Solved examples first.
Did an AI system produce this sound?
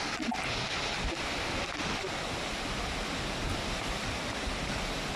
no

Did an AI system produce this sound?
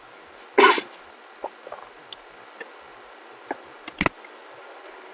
no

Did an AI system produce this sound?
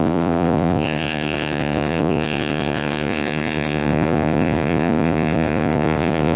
yes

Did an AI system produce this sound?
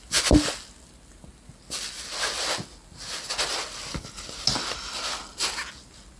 no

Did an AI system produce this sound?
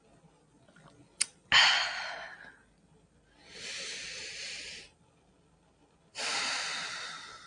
no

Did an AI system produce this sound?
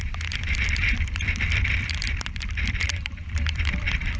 yes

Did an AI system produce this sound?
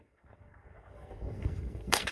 yes